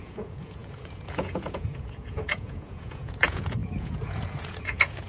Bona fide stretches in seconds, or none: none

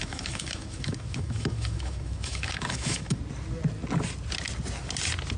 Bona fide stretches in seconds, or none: 3.2-5.4

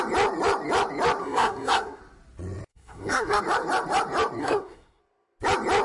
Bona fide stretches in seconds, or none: 0.0-1.2; 2.0-2.7; 3.4-4.4; 5.0-5.8